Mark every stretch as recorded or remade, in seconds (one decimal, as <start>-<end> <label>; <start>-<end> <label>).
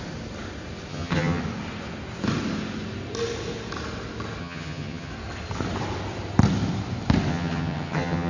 0.0-0.9 recorded; 0.9-1.4 remade; 1.4-4.4 recorded; 4.4-5.1 remade; 5.1-7.3 recorded; 7.3-8.3 remade